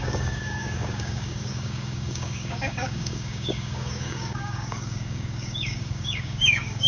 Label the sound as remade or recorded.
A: remade